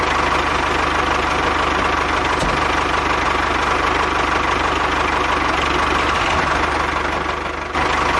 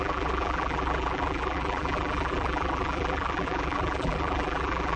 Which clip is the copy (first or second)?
second